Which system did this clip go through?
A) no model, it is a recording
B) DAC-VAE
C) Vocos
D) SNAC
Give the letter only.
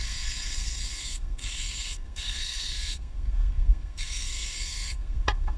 D